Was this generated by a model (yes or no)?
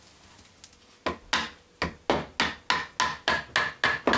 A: no